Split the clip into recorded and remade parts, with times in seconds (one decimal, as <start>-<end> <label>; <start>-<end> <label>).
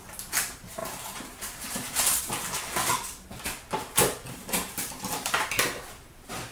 0.0-0.8 recorded; 0.8-2.2 remade; 2.2-4.4 recorded; 4.4-5.3 remade; 5.3-6.5 recorded